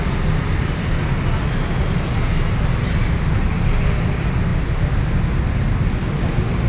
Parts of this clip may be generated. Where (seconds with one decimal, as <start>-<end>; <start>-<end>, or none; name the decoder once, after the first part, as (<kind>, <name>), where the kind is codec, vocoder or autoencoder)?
none